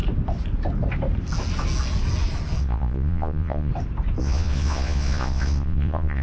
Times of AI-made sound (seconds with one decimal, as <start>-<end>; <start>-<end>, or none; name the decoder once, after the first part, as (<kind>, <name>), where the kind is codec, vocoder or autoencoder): 2.6-3.7 (vocoder, Vocos); 4.2-6.2